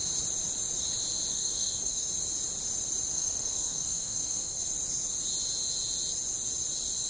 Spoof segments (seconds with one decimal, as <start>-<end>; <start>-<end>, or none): 1.3-2.1; 3.1-4.7